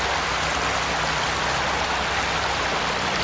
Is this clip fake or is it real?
real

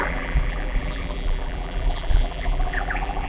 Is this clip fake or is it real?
fake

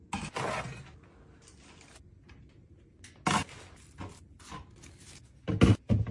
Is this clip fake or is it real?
real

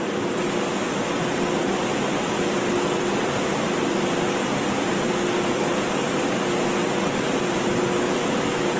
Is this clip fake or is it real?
real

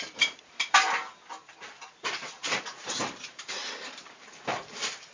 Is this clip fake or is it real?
fake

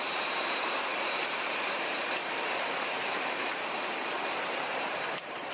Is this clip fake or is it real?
fake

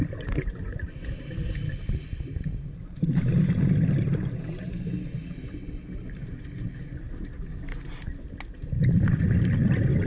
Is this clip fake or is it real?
real